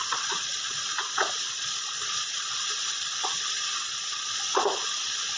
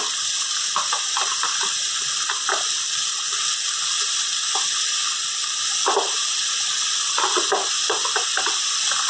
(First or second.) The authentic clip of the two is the second